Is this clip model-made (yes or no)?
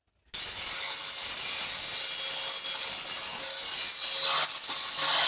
no